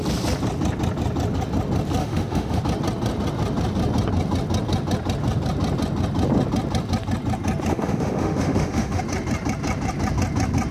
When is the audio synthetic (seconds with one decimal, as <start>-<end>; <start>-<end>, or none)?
2.0-2.6; 7.7-9.0